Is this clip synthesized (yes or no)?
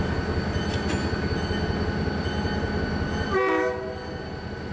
no